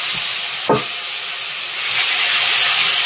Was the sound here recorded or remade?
recorded